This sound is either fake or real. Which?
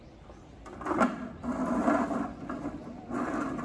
real